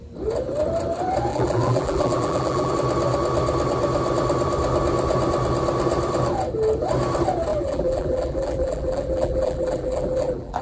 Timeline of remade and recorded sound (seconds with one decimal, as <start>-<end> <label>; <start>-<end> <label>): 0.0-1.3 recorded; 1.3-2.7 remade; 2.7-7.5 recorded; 7.5-10.6 remade